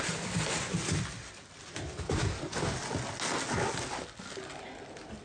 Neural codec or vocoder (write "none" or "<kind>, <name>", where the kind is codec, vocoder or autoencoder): none